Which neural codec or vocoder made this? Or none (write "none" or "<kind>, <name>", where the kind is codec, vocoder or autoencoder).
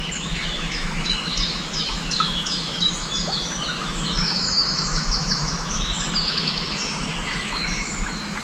autoencoder, DAC-VAE